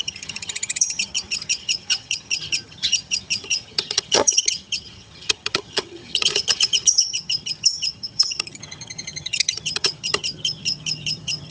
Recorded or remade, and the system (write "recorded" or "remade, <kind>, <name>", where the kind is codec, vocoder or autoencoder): remade, vocoder, HiFi-GAN